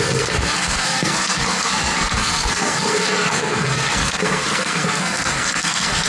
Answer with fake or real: fake